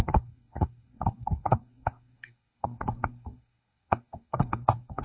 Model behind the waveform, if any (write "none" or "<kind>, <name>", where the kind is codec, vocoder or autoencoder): codec, SNAC